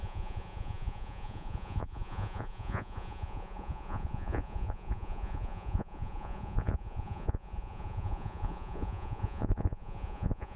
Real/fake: fake